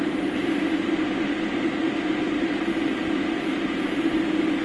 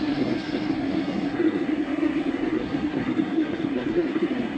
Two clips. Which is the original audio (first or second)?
first